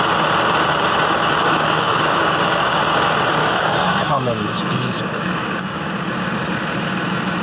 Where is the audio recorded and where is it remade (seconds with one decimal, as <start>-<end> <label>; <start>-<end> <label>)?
0.0-1.4 recorded; 1.4-2.8 remade; 2.8-3.4 recorded; 3.4-6.0 remade; 6.0-7.4 recorded